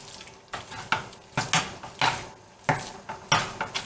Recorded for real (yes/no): yes